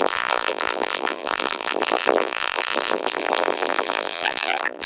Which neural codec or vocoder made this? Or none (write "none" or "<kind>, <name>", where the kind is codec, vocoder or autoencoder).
vocoder, BigVGAN v2